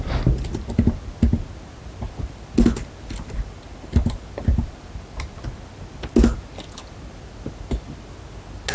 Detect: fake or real real